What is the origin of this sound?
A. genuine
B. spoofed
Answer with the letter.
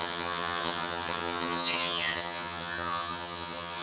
B